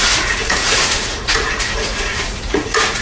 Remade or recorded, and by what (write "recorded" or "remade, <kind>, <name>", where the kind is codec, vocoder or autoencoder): remade, vocoder, Vocos